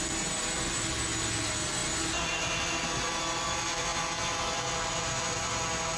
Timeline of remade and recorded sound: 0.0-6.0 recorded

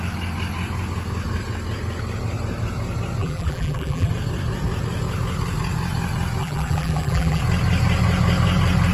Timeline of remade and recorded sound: 0.0-3.2 recorded; 3.2-4.1 remade; 4.1-6.4 recorded; 6.4-7.4 remade; 7.4-8.9 recorded

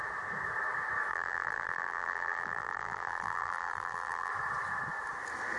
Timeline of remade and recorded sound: 0.0-1.1 recorded; 1.1-4.3 remade; 4.3-5.6 recorded

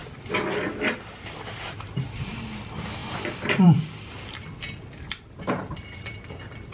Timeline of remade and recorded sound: 0.0-2.0 remade; 2.0-3.0 recorded; 3.0-4.2 remade; 4.2-6.7 recorded

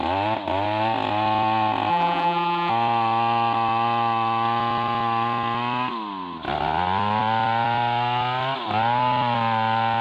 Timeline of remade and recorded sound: 0.0-1.9 recorded; 1.9-2.7 remade; 2.7-10.0 recorded